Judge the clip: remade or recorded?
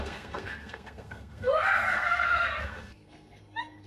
remade